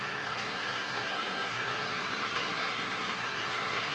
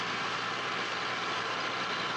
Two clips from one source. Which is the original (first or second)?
second